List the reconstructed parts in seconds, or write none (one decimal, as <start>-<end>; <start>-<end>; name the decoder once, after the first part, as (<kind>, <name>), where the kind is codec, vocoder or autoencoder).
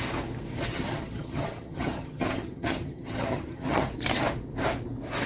0.7-3.9 (vocoder, HiFi-GAN)